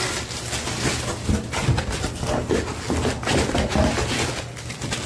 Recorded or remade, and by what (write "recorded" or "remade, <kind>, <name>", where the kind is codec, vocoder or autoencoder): recorded